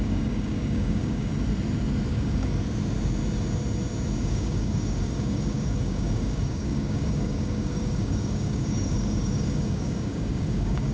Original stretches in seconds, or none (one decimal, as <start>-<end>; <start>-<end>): 1.3-2.1; 2.5-4.2